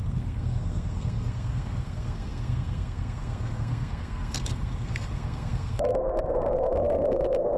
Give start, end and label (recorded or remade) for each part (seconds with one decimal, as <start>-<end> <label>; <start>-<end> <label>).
0.0-7.6 remade